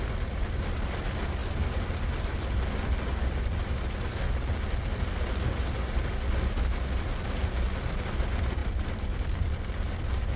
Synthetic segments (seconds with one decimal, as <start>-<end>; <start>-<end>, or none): none